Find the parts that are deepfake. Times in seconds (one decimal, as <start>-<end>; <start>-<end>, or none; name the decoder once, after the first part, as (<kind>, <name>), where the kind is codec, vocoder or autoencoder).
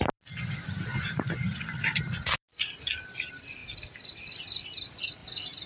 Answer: none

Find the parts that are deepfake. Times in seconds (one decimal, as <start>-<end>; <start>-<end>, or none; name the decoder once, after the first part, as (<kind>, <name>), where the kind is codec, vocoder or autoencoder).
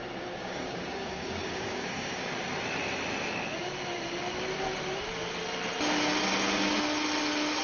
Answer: 0.0-2.3 (codec, DAC)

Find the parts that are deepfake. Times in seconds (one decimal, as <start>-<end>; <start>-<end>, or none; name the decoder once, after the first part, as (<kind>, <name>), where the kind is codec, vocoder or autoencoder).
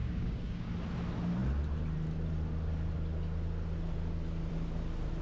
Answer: 0.0-0.7 (codec, DAC)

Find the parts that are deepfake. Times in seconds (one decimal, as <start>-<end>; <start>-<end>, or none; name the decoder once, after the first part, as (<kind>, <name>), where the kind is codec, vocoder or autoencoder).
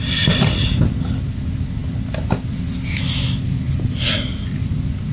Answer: none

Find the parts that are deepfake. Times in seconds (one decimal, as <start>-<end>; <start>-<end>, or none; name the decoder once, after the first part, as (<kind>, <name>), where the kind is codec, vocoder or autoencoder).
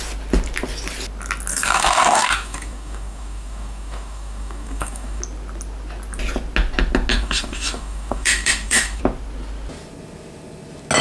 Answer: 1.5-5.2 (codec, DAC); 7.1-9.0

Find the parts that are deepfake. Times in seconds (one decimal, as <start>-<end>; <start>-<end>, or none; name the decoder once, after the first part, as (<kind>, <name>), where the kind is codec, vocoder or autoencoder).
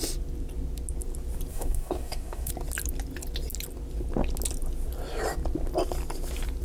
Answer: 1.5-2.5 (codec, DAC)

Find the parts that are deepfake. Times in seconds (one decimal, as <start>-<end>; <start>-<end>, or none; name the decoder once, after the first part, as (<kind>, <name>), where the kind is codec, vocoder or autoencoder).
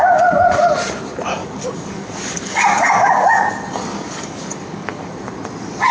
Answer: 1.4-3.5 (codec, DAC); 3.9-5.1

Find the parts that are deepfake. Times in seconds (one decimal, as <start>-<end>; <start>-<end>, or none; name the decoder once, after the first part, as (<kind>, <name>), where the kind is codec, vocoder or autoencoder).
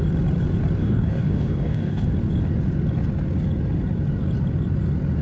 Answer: 0.8-2.1 (codec, DAC)